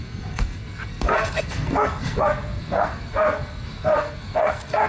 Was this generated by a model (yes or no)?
yes